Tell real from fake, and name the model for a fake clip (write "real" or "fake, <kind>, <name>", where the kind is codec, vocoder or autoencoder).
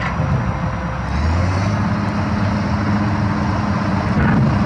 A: real